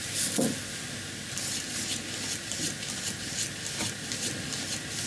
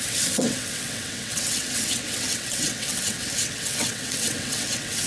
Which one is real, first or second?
first